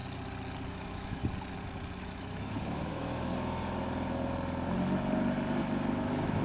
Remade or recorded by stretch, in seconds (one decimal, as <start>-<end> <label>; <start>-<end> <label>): 0.0-0.7 recorded; 0.7-1.2 remade; 1.2-2.0 recorded; 2.0-3.3 remade; 3.3-5.6 recorded; 5.6-6.4 remade

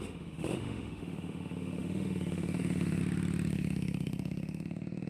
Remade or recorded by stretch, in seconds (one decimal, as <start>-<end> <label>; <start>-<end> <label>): 0.0-3.0 remade; 3.0-3.5 recorded; 3.5-5.1 remade